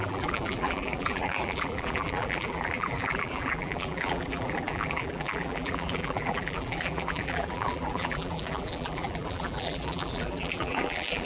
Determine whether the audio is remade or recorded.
remade